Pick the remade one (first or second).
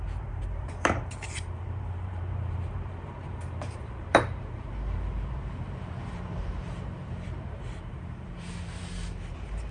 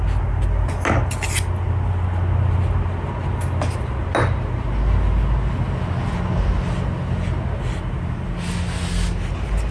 first